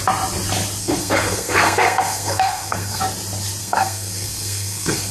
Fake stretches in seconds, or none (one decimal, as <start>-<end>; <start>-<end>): 0.8-3.0; 3.6-5.1